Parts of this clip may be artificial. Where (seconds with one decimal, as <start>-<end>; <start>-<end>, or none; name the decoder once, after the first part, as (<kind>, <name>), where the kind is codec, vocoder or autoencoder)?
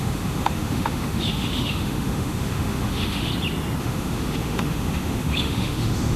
0.0-3.3 (autoencoder, DAC-VAE); 3.8-6.2